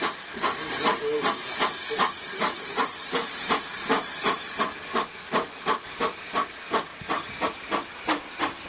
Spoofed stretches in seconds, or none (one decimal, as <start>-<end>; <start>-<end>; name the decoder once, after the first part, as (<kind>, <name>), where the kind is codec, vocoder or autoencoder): 2.4-5.1 (vocoder, BigVGAN v2)